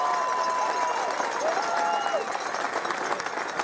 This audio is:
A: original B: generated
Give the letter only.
A